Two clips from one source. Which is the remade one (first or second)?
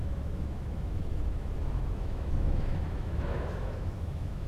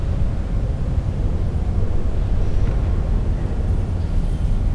first